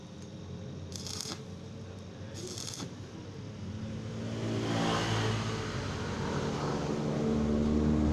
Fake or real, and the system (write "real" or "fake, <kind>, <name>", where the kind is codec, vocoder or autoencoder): real